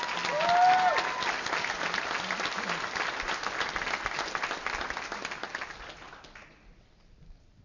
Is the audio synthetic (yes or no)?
no